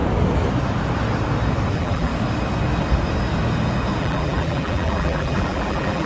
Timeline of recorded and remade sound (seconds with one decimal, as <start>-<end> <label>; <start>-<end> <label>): 0.0-1.7 recorded; 1.7-2.1 remade; 2.1-4.0 recorded; 4.0-6.1 remade